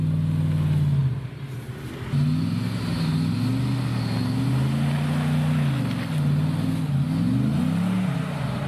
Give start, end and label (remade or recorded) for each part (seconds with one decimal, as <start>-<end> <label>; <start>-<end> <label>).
0.0-8.7 recorded